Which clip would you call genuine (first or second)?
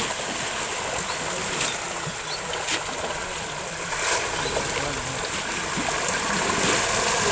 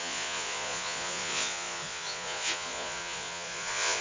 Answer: first